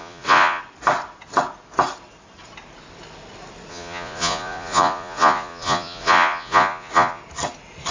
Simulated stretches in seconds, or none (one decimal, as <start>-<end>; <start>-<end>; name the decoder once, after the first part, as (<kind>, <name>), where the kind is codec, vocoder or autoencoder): 0.0-0.6 (vocoder, Vocos); 3.7-7.2